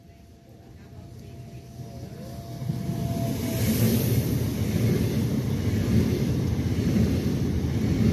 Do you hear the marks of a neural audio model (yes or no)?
no